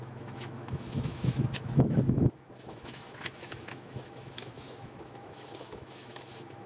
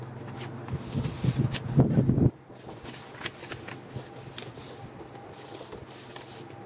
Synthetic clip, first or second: first